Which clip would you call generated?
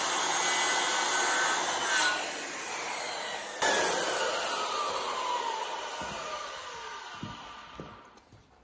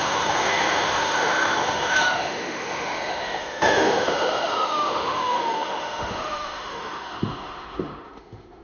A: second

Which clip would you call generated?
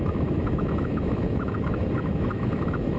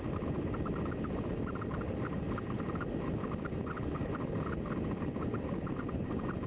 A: first